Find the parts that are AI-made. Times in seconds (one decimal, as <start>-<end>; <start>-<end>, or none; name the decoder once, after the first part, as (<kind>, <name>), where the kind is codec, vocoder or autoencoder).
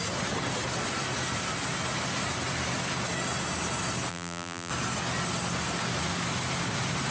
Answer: 4.1-4.7 (vocoder, BigVGAN v2)